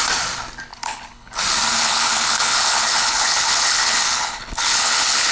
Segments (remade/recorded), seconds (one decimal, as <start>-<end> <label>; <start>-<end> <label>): 0.0-0.7 recorded; 0.7-1.4 remade; 1.4-1.8 recorded; 1.8-5.3 remade